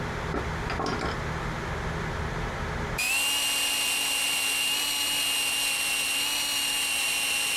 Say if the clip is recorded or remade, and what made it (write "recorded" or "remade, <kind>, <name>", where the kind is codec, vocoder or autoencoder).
recorded